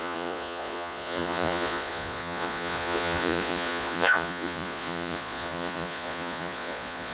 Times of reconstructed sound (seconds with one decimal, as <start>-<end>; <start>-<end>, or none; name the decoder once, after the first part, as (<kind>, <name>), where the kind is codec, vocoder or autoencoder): 0.0-7.1 (vocoder, Vocos)